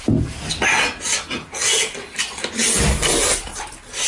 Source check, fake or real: real